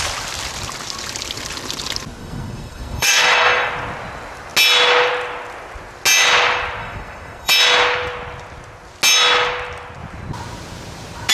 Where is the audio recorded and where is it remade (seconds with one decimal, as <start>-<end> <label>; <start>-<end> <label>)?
0.0-2.2 recorded; 2.2-3.7 remade; 3.7-6.8 recorded; 6.8-7.5 remade; 7.5-11.3 recorded